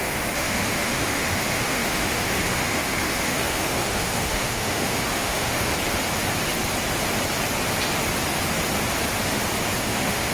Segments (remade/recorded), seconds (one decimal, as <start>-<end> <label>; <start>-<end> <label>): 0.0-5.7 remade; 5.7-9.8 recorded; 9.8-10.3 remade